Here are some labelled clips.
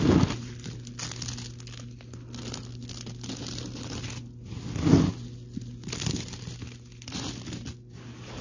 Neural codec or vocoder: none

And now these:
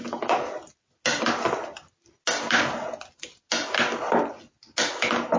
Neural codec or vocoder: none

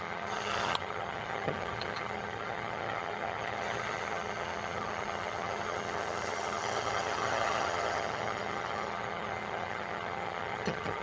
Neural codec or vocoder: vocoder, HiFi-GAN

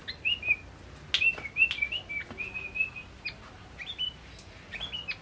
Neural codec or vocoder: none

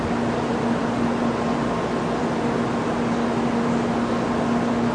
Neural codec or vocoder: none